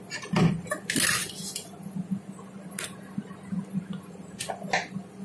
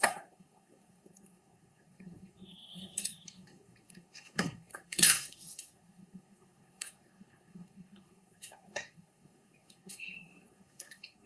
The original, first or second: first